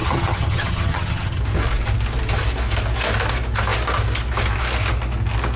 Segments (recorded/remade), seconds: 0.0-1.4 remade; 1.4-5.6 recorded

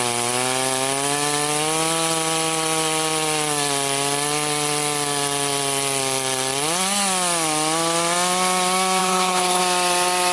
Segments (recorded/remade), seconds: 0.0-9.0 recorded; 9.0-9.6 remade; 9.6-10.3 recorded

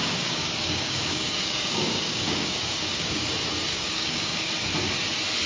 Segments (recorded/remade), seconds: 0.0-3.3 remade; 3.3-3.7 recorded; 3.7-4.5 remade; 4.5-5.5 recorded

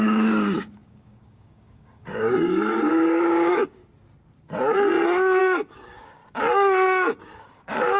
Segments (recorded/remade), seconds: 0.0-3.8 remade; 3.8-5.4 recorded; 5.4-6.2 remade; 6.2-7.2 recorded; 7.2-8.0 remade

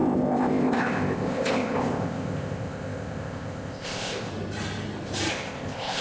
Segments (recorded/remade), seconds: 0.0-4.3 remade; 4.3-5.3 recorded; 5.3-6.0 remade

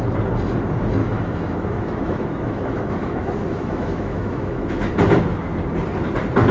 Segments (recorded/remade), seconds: 0.0-1.0 recorded; 1.0-4.9 remade; 4.9-6.5 recorded

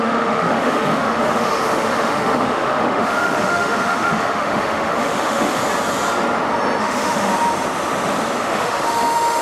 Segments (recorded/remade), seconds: 0.0-5.6 remade; 5.6-6.8 recorded; 6.8-7.3 remade; 7.3-8.4 recorded; 8.4-9.4 remade